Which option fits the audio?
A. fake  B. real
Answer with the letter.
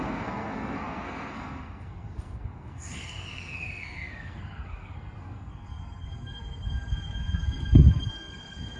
A